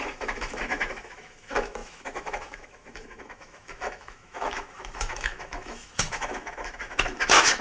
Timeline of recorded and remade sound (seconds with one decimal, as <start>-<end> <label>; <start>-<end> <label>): 0.0-7.6 remade